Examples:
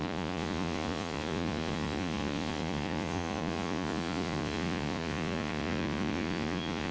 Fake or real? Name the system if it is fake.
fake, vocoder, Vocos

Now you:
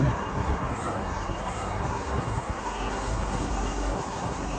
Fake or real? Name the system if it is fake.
fake, codec, SNAC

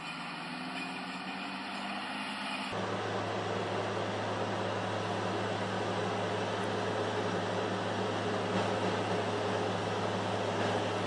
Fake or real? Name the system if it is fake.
real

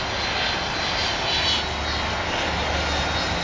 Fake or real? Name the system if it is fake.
real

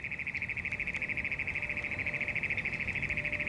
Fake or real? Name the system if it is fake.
real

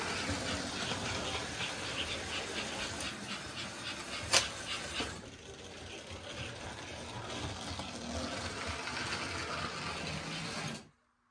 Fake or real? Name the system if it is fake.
real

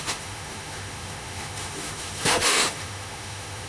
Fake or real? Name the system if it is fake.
fake, autoencoder, DAC-VAE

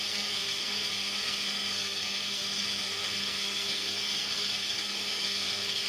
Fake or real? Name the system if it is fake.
fake, codec, SNAC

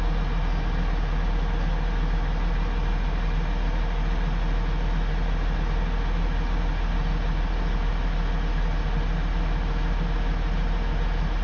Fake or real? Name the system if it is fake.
real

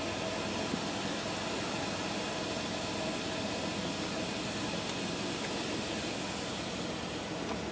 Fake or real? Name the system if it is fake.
real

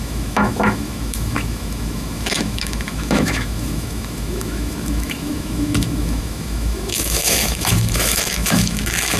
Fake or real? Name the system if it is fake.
fake, autoencoder, DAC-VAE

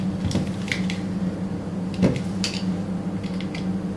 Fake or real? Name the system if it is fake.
real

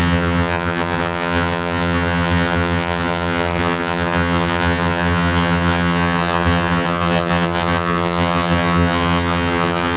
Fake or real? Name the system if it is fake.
fake, vocoder, HiFi-GAN